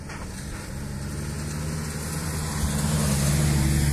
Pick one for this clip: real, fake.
real